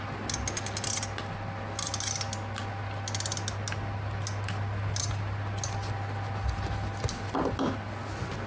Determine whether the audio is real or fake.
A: real